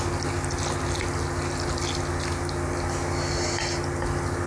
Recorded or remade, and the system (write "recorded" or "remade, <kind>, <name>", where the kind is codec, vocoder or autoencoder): recorded